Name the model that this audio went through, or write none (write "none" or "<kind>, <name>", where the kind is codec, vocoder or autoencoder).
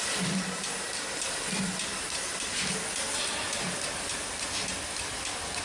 none